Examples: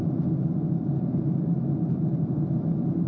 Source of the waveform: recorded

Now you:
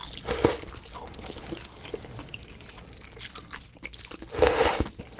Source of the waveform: recorded